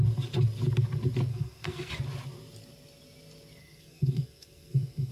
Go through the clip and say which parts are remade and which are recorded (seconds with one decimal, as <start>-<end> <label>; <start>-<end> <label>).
0.0-1.3 recorded; 1.3-1.9 remade; 1.9-3.6 recorded; 3.6-5.1 remade